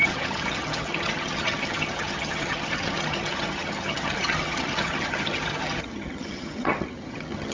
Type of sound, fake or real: fake